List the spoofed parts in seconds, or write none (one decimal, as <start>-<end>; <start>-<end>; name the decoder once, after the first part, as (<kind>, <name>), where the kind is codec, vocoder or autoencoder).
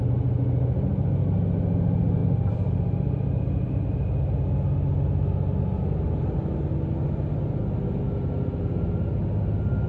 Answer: 2.2-4.0 (vocoder, BigVGAN v2)